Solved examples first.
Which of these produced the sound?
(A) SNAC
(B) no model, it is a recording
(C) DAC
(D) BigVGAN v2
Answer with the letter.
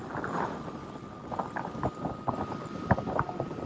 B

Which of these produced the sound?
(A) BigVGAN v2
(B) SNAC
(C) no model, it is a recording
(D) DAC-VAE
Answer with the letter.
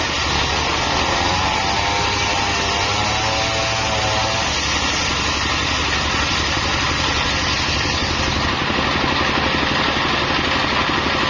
C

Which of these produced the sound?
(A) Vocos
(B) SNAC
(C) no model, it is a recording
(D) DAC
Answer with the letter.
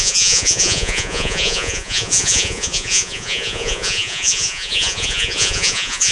A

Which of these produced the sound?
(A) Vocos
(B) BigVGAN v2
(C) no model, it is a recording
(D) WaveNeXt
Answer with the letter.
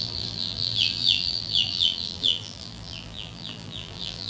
B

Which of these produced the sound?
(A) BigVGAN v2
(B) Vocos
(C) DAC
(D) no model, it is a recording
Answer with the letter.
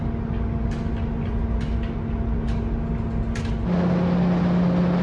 D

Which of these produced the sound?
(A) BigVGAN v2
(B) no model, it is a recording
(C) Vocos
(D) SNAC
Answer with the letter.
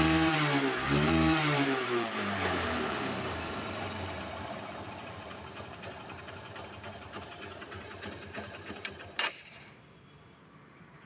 A